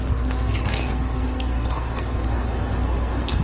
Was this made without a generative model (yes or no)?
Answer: no